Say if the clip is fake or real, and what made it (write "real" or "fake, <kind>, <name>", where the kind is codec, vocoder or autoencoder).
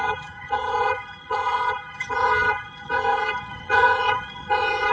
fake, vocoder, HiFi-GAN